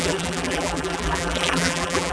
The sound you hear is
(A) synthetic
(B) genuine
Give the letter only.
A